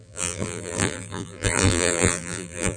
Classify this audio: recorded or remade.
remade